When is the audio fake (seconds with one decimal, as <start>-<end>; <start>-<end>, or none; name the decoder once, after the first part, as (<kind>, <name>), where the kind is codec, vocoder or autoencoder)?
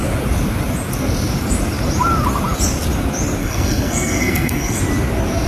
3.4-4.8 (codec, SNAC)